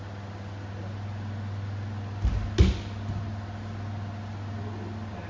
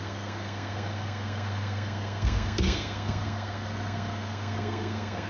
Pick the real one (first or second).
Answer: first